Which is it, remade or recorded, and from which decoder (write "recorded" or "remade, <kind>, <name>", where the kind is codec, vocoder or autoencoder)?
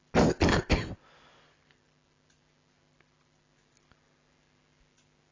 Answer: recorded